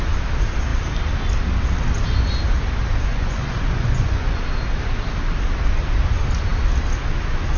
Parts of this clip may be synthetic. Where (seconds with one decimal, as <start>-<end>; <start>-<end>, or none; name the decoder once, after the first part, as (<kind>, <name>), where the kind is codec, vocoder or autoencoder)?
3.1-4.4 (vocoder, Vocos)